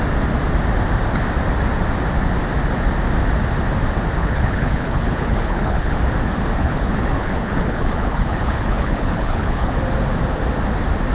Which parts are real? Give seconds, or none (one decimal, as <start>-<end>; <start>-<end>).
0.0-4.2; 6.0-6.6; 9.7-11.1